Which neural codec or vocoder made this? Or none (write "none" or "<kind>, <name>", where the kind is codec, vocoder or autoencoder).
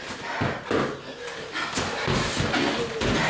none